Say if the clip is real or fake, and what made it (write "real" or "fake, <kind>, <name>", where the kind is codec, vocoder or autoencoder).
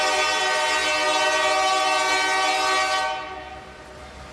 real